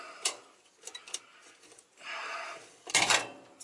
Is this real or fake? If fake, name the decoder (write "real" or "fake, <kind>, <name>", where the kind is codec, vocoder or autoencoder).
fake, vocoder, BigVGAN v2